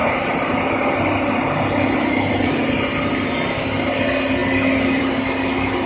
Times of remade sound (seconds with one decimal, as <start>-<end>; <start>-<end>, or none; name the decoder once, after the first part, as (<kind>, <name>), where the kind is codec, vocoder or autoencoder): 4.4-5.0 (vocoder, BigVGAN v2)